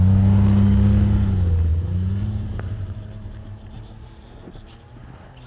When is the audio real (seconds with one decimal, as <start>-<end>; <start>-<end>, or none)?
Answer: 0.0-1.7; 5.0-5.5

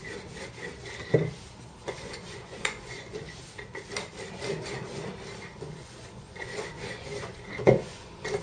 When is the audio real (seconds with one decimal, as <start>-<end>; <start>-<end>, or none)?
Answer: 0.0-1.8; 3.2-5.5

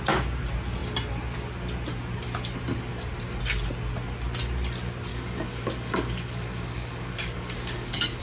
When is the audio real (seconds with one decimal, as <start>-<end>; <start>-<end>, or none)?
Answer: 0.0-5.1